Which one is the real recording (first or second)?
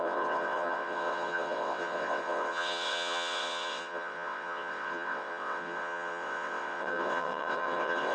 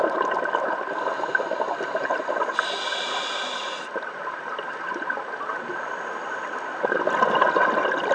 second